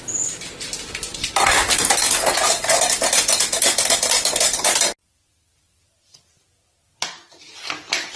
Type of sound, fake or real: real